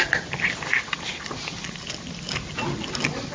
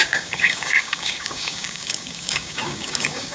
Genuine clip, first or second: first